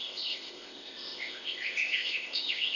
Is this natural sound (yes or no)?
no